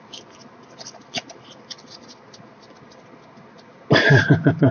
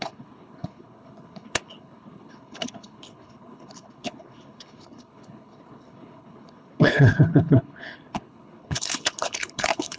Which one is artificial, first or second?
second